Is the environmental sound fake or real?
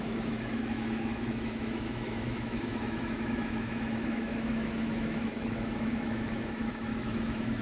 fake